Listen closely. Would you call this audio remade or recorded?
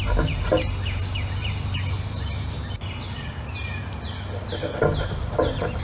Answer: recorded